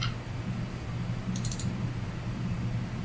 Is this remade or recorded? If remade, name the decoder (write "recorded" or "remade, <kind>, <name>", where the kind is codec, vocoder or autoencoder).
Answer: recorded